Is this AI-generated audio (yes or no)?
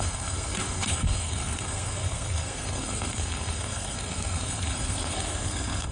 yes